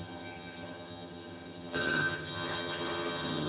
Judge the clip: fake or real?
fake